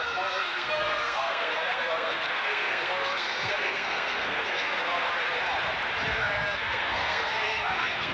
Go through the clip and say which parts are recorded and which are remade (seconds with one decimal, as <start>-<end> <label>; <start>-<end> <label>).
0.0-5.1 remade; 5.1-6.1 recorded; 6.1-8.1 remade